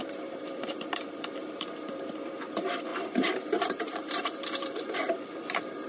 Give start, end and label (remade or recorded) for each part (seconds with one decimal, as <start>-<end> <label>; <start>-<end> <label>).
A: 0.0-5.9 remade